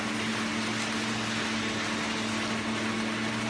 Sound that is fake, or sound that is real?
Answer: real